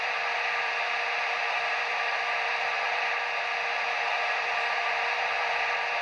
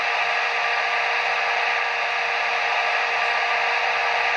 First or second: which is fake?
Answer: first